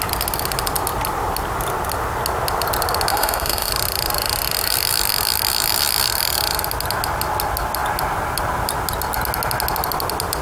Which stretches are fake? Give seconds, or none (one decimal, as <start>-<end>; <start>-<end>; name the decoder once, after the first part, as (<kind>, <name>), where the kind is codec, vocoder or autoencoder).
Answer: 3.1-3.7 (autoencoder, DAC-VAE)